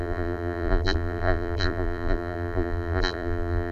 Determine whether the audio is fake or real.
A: fake